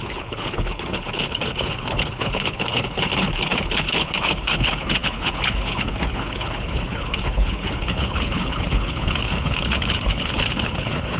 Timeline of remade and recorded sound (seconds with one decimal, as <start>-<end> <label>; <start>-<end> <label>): 0.0-11.2 remade